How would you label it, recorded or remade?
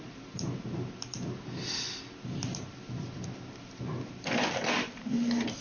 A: recorded